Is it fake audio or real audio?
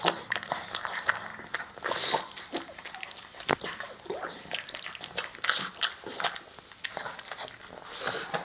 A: real